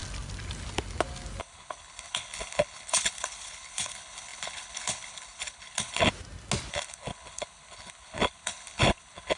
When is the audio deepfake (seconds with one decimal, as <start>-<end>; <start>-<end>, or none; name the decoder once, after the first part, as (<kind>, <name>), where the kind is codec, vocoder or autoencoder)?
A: 1.4-6.1 (codec, HILCodec); 6.7-9.4